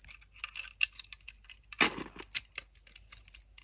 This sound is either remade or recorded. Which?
recorded